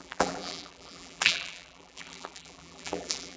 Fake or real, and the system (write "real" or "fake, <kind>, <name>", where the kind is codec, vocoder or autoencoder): fake, vocoder, BigVGAN v2